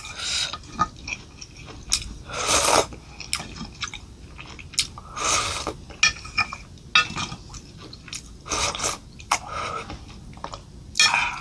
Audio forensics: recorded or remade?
recorded